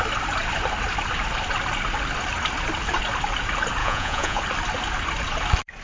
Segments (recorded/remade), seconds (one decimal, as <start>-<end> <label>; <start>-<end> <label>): 0.0-3.8 recorded; 3.8-4.4 remade; 4.4-5.8 recorded